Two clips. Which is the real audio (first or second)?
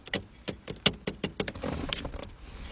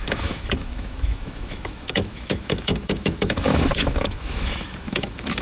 first